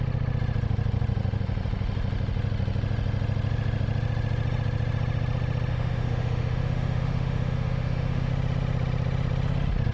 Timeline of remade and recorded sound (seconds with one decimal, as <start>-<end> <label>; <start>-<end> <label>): 0.0-5.7 recorded; 5.7-8.3 remade; 8.3-9.9 recorded

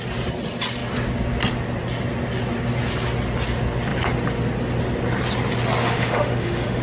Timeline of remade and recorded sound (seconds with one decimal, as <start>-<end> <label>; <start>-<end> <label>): 0.0-5.8 recorded; 5.8-6.8 remade

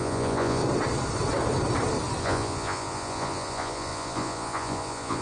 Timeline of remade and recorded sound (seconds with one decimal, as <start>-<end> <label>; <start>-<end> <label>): 0.0-0.6 remade; 0.6-2.2 recorded; 2.2-5.2 remade